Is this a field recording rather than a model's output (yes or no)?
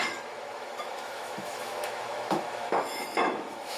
no